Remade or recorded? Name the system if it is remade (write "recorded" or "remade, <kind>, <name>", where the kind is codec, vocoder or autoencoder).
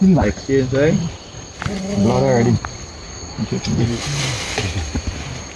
recorded